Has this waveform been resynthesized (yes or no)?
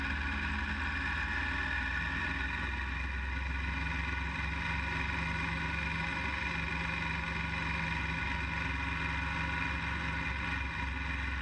no